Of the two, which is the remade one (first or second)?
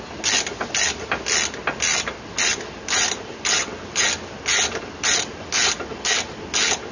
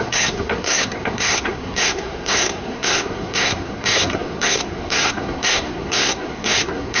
second